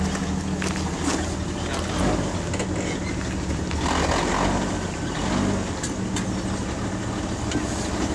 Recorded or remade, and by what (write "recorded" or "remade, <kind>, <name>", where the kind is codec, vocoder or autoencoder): recorded